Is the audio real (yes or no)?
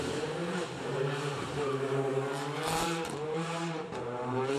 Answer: no